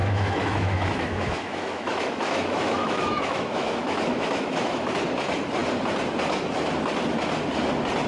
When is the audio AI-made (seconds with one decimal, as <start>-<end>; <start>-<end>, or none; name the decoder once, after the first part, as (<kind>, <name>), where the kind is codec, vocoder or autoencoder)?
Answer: 0.0-4.9 (autoencoder, DAC-VAE)